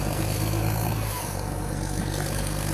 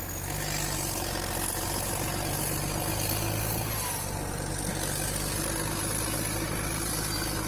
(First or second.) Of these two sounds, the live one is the second